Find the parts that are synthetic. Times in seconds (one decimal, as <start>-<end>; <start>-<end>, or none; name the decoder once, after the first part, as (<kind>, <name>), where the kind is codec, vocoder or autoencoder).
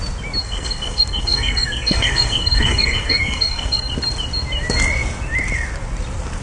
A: 0.4-3.9 (codec, SNAC)